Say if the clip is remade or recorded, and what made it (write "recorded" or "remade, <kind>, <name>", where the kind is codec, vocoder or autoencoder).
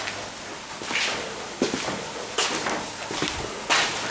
recorded